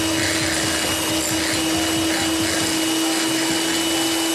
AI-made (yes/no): no